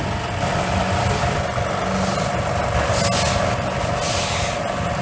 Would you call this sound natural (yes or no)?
yes